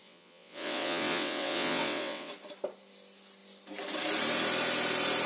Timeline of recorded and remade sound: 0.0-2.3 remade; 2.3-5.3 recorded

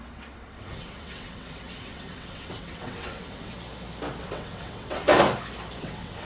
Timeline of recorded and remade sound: 0.0-3.5 remade; 3.5-4.2 recorded; 4.2-5.1 remade; 5.1-5.8 recorded; 5.8-6.2 remade